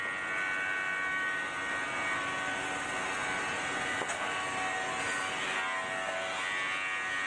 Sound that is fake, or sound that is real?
real